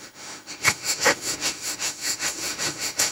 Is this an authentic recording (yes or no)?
no